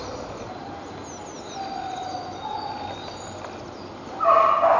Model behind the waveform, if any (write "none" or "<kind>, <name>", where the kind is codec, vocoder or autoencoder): none